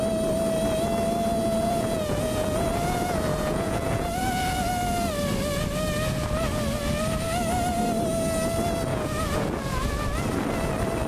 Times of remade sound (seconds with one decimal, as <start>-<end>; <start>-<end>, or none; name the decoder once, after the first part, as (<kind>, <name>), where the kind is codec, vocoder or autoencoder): 1.4-4.7 (vocoder, Vocos); 8.9-9.9